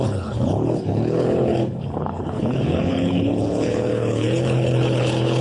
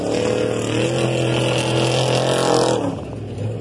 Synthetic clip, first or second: first